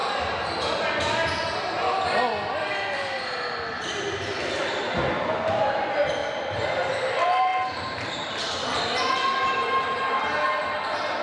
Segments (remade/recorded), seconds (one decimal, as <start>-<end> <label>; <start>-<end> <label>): 0.0-4.6 recorded; 4.6-7.5 remade; 7.5-9.1 recorded; 9.1-11.2 remade